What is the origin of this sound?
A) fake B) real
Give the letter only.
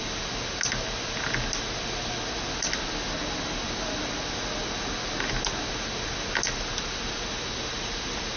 B